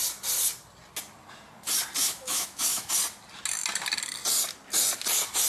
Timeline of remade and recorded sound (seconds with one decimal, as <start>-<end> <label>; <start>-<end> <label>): 0.0-2.0 recorded; 2.0-2.9 remade; 2.9-5.5 recorded